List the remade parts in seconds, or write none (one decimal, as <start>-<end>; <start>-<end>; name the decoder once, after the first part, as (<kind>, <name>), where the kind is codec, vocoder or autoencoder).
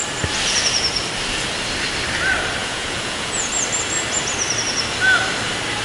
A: 2.6-3.5 (vocoder, Vocos)